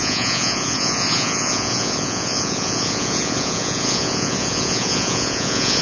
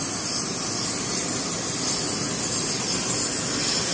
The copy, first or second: first